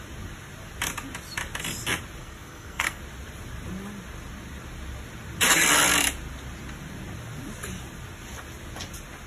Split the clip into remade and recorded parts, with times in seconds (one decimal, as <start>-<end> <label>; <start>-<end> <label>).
0.0-2.2 recorded; 2.2-3.0 remade; 3.0-9.3 recorded